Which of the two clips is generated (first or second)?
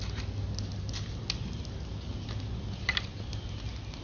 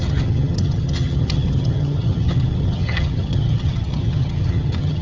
second